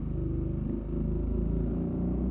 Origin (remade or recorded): recorded